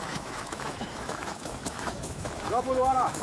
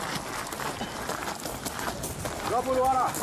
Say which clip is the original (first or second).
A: second